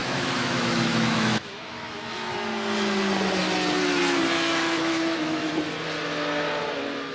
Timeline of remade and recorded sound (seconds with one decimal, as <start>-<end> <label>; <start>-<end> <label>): 0.0-2.3 remade; 2.3-4.5 recorded; 4.5-5.5 remade; 5.5-7.1 recorded